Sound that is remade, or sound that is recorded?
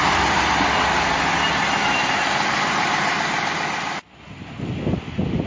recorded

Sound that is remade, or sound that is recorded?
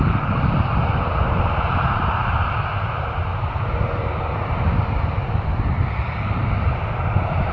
remade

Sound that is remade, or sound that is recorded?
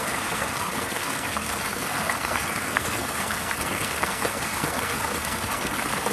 remade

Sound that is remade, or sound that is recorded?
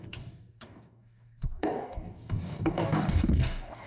remade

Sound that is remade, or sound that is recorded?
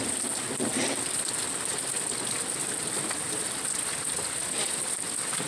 recorded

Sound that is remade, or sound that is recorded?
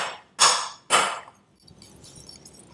recorded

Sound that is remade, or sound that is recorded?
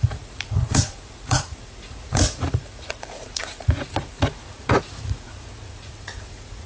remade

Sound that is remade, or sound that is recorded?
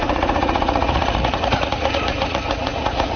remade